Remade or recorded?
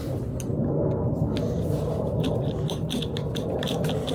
recorded